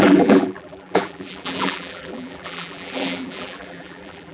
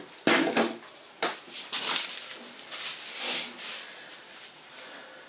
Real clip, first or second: second